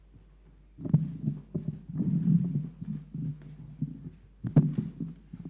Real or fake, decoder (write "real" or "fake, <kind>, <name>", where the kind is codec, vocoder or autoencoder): real